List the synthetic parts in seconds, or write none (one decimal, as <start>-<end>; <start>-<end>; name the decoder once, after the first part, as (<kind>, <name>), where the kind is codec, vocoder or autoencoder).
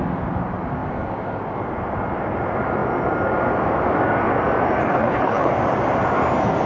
4.8-5.5 (codec, HILCodec)